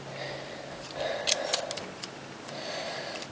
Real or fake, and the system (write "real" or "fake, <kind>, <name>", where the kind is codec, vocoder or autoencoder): real